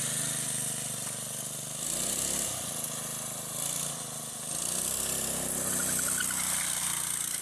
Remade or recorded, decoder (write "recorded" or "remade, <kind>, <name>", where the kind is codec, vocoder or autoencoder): recorded